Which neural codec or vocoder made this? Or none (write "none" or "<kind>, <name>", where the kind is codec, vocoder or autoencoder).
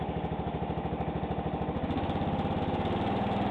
none